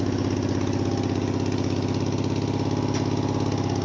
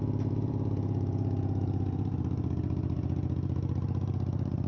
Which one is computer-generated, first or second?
second